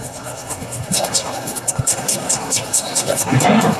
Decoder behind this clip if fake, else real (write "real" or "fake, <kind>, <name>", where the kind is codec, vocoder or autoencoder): fake, codec, SNAC